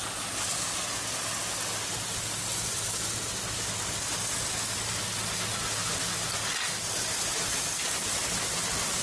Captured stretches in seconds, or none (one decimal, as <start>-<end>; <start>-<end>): 0.0-9.0